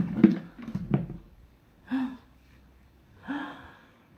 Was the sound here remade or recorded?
remade